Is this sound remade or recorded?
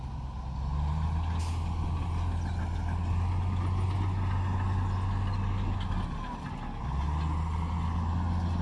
recorded